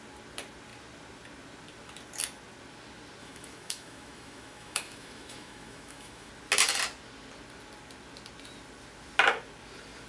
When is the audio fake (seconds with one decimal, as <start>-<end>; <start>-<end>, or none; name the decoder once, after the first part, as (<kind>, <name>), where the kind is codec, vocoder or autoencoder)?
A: 3.2-6.3 (autoencoder, DAC-VAE)